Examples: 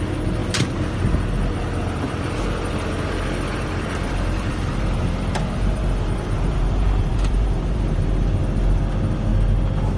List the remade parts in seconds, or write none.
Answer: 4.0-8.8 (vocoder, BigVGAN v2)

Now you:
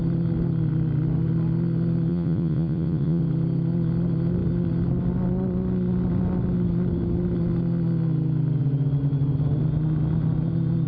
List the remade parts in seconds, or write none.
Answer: 2.1-3.2 (vocoder, Vocos)

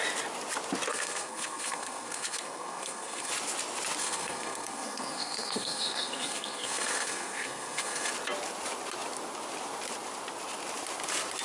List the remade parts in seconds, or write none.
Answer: 0.9-3.3 (codec, SNAC); 4.0-8.1

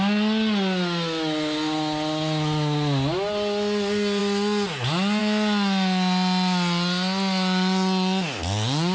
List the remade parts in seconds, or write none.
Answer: none

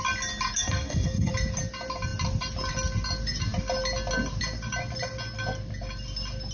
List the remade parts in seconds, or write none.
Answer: 0.6-1.3 (codec, SNAC)

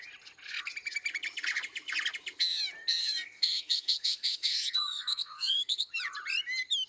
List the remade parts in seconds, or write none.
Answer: 3.0-5.9 (codec, SNAC)

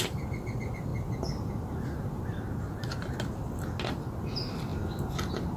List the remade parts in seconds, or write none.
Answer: none